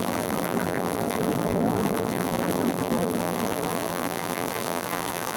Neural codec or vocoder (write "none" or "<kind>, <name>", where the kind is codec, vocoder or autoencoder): vocoder, BigVGAN v2